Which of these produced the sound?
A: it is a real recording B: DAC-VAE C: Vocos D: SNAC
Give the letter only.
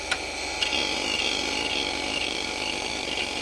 A